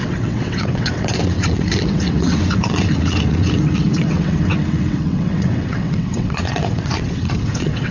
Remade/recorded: remade